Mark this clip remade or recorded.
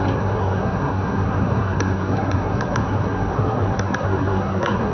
remade